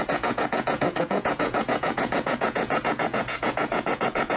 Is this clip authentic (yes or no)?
no